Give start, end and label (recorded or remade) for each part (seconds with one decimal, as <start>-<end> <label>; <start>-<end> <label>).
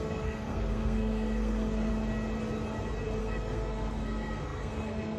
0.0-1.9 remade; 1.9-3.2 recorded; 3.2-5.2 remade